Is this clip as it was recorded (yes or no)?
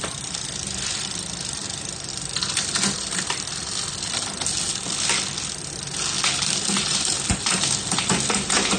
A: yes